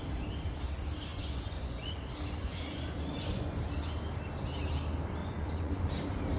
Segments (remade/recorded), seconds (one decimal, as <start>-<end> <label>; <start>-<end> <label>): 0.0-1.1 recorded; 1.1-2.0 remade; 2.0-2.4 recorded; 2.4-3.6 remade; 3.6-5.2 recorded; 5.2-5.9 remade; 5.9-6.4 recorded